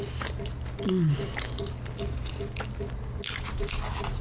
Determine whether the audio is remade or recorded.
recorded